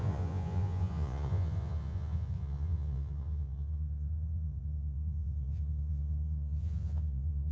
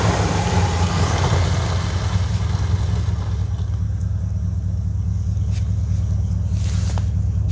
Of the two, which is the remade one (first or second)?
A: first